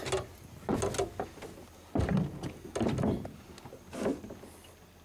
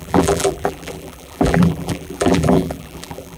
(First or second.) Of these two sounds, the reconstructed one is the second